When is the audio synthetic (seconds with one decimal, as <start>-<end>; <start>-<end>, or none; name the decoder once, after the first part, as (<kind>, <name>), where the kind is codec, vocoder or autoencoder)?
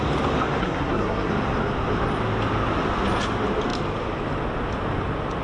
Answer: 0.6-1.3 (codec, SNAC)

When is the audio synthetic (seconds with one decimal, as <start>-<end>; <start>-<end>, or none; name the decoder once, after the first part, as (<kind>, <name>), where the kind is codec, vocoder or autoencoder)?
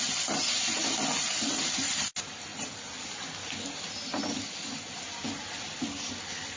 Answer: none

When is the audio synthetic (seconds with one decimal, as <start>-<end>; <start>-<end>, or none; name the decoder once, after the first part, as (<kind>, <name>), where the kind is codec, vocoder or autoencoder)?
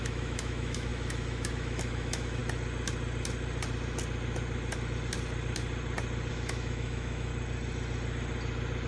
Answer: 0.0-2.4 (autoencoder, DAC-VAE); 6.3-7.3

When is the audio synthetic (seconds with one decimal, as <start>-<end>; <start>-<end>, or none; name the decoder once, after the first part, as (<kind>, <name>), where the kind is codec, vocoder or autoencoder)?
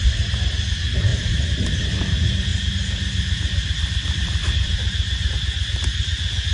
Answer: 1.1-1.8 (vocoder, BigVGAN v2); 2.5-5.3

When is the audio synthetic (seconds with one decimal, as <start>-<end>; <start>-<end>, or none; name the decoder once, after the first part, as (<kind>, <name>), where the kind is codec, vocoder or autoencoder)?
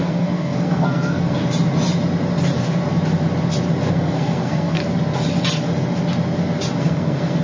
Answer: 0.0-1.4 (codec, SNAC); 3.9-4.8; 6.8-7.4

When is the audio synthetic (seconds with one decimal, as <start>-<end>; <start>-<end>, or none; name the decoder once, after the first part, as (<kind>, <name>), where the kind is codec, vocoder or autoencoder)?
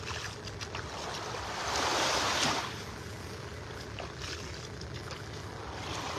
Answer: 1.9-2.6 (vocoder, BigVGAN v2)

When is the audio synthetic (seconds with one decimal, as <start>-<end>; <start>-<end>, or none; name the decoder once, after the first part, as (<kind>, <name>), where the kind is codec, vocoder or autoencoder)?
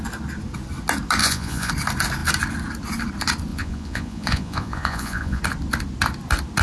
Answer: 1.2-1.7 (vocoder, Vocos); 3.5-5.4